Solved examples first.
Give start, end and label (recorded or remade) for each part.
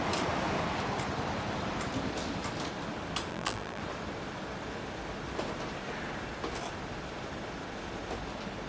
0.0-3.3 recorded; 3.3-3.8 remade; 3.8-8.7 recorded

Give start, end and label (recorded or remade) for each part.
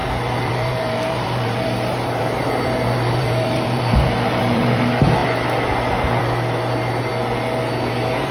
0.0-4.8 remade; 4.8-8.3 recorded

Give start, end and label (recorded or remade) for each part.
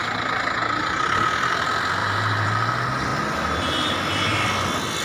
0.0-2.0 recorded; 2.0-2.7 remade; 2.7-5.0 recorded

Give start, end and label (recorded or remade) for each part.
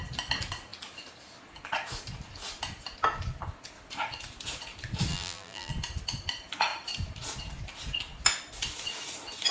0.0-5.1 recorded; 5.1-5.7 remade; 5.7-9.5 recorded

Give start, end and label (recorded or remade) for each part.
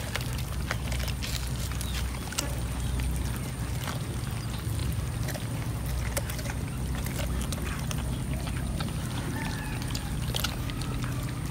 0.0-11.5 recorded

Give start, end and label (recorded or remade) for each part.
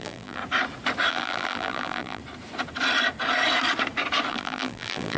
0.0-0.4 remade; 0.4-1.1 recorded; 1.1-2.2 remade; 2.2-4.3 recorded; 4.3-5.2 remade